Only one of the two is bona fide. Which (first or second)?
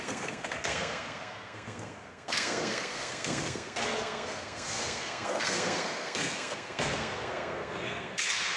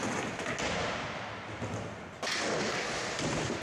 second